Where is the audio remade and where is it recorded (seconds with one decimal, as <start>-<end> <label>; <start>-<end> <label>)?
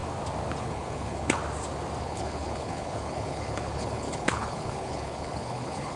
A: 0.0-0.6 recorded; 0.6-1.4 remade; 1.4-2.0 recorded; 2.0-6.0 remade